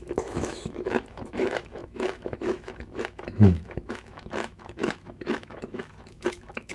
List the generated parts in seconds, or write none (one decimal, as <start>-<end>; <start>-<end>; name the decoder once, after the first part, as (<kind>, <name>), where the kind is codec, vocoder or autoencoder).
0.0-6.7 (autoencoder, DAC-VAE)